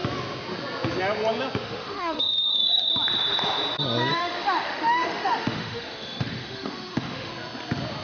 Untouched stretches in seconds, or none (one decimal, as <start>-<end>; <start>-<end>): 0.0-1.6; 2.9-4.1; 7.3-8.0